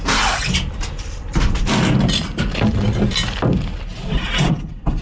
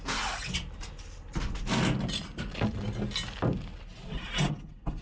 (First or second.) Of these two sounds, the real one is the second